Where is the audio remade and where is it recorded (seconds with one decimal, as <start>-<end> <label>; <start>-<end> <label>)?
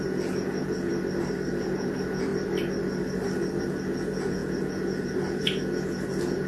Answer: 0.0-0.9 remade; 0.9-1.5 recorded; 1.5-2.3 remade; 2.3-3.6 recorded; 3.6-6.5 remade